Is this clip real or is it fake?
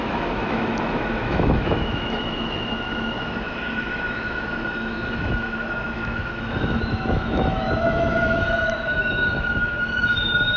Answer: fake